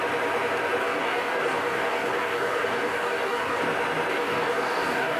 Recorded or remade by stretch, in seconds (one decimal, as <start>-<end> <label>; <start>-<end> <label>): 0.0-0.8 recorded; 0.8-3.6 remade; 3.6-4.1 recorded; 4.1-5.2 remade